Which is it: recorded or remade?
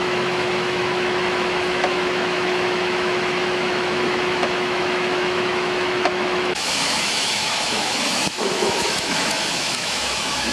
remade